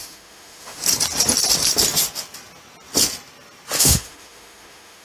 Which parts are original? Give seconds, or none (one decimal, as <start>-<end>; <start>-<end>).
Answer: 0.8-3.8